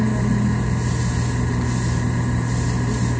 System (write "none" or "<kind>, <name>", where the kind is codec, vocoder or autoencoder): none